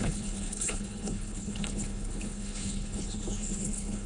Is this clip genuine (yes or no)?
no